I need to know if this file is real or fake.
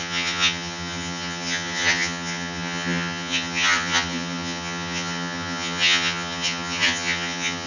fake